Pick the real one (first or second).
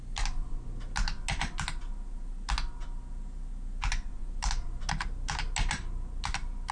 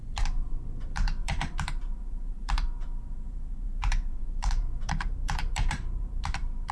first